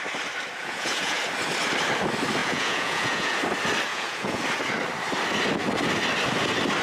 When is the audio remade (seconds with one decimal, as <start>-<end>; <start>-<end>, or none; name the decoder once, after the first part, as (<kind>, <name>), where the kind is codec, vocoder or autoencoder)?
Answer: 0.6-1.2 (vocoder, Vocos); 2.4-3.4; 3.9-4.4